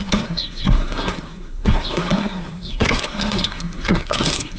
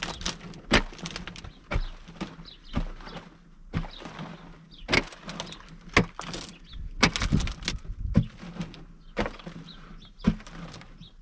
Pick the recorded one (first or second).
second